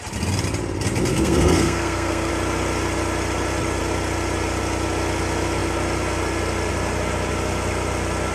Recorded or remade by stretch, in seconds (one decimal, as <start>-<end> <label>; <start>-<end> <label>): 0.0-1.1 recorded; 1.1-2.3 remade; 2.3-8.3 recorded

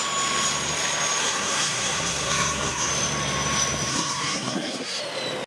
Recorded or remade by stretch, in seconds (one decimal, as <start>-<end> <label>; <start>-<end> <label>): 0.0-1.2 recorded; 1.2-2.9 remade; 2.9-3.9 recorded; 3.9-5.0 remade; 5.0-5.5 recorded